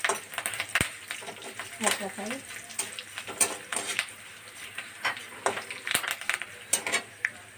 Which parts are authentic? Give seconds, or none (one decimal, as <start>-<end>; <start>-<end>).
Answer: 0.0-3.7; 5.2-7.6